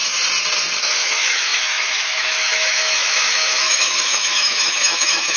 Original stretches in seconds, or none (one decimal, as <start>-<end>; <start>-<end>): 0.0-0.8